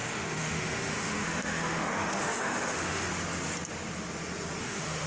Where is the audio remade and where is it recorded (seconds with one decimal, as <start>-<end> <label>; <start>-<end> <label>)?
0.0-3.1 remade; 3.1-4.6 recorded; 4.6-5.1 remade